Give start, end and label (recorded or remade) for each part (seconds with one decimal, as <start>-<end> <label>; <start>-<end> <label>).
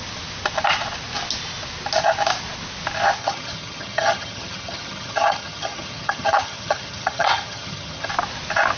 0.0-3.2 recorded; 3.2-8.1 remade; 8.1-8.8 recorded